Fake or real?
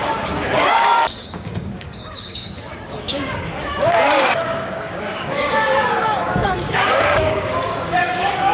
fake